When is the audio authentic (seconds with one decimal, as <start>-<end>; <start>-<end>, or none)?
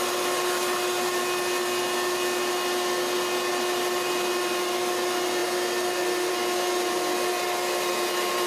0.0-8.5